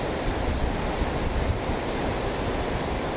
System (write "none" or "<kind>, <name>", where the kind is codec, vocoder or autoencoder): vocoder, BigVGAN v2